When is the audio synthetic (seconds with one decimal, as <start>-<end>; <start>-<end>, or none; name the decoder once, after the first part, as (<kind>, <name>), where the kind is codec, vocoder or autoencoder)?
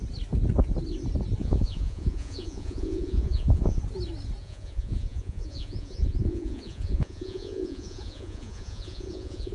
1.4-3.8 (vocoder, Vocos); 4.4-9.5